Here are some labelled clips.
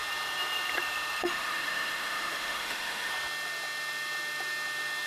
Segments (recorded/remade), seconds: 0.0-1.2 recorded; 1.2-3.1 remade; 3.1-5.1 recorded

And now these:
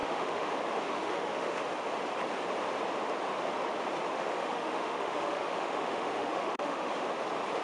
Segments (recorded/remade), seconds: 0.0-0.5 remade; 0.5-0.9 recorded; 0.9-1.6 remade; 1.6-4.1 recorded; 4.1-6.9 remade; 6.9-7.6 recorded